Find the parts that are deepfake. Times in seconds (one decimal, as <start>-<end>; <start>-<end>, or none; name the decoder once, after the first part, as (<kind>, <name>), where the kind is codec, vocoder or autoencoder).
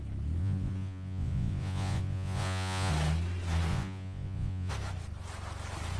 0.4-2.9 (vocoder, Vocos); 3.7-4.7